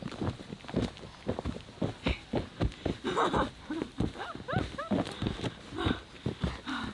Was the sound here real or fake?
real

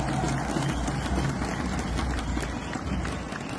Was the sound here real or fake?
real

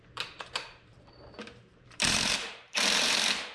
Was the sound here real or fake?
fake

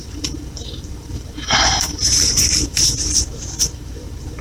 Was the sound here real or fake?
fake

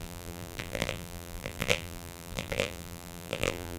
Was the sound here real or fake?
fake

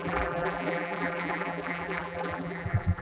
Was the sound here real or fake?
fake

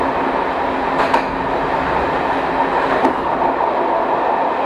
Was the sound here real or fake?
real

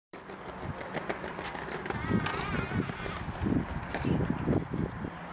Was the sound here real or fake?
real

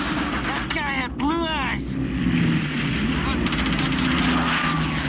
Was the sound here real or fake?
real